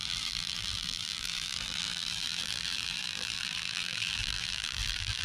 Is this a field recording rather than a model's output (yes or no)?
no